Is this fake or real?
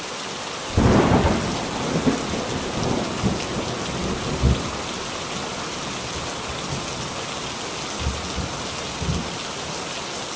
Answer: real